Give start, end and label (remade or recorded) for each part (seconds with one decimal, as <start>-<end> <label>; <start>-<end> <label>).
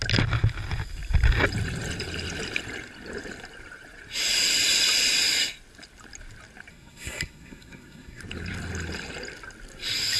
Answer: 0.0-6.7 recorded; 6.7-8.2 remade; 8.2-10.2 recorded